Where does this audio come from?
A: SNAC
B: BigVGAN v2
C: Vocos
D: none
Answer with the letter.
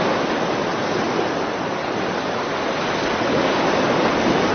D